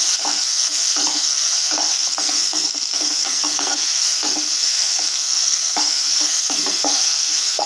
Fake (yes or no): yes